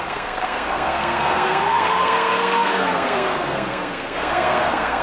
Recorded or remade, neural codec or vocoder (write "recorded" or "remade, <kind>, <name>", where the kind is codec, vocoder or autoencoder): remade, codec, SNAC